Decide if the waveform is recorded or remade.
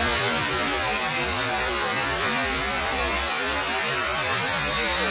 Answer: remade